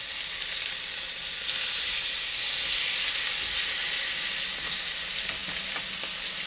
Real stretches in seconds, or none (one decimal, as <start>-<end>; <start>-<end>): 0.0-6.5